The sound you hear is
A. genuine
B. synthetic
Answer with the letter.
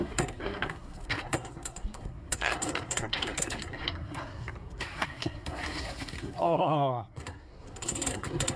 B